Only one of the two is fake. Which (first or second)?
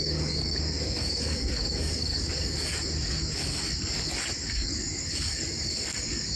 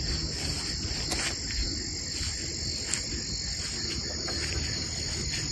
first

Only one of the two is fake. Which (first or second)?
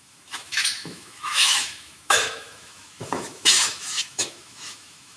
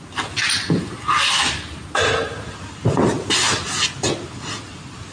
first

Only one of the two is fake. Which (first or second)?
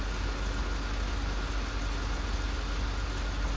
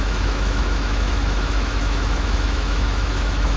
second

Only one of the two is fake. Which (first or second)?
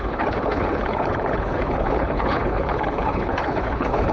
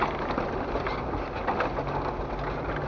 first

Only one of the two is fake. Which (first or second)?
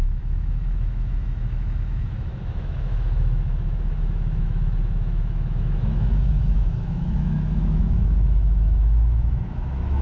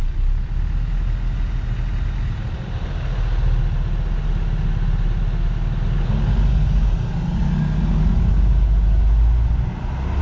first